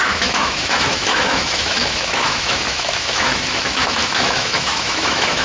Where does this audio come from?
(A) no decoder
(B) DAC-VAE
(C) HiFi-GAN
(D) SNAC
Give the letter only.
B